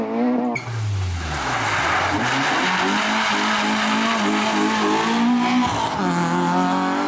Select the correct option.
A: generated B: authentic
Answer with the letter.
B